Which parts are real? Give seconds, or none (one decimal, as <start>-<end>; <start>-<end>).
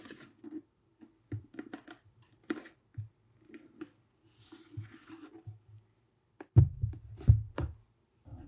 0.0-8.5